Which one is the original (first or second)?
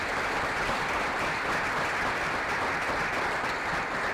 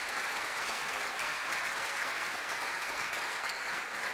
first